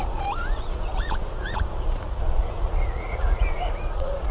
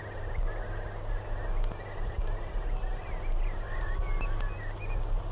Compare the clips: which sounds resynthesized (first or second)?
first